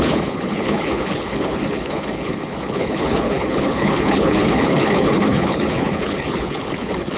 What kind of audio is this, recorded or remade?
remade